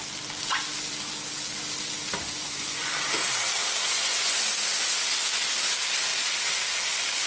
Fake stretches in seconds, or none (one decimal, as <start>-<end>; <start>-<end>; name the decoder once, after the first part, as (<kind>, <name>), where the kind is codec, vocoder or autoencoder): 2.2-2.9 (vocoder, Vocos); 3.8-4.4